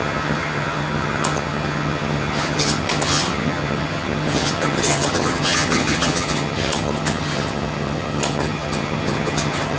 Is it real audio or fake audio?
fake